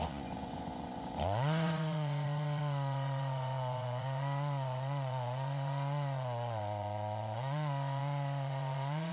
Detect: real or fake fake